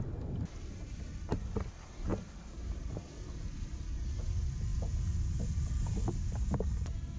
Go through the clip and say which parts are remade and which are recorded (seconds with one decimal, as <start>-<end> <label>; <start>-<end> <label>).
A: 0.0-2.1 recorded; 2.1-2.9 remade; 2.9-7.2 recorded